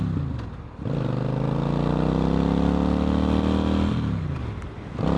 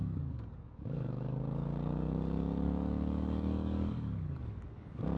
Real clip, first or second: first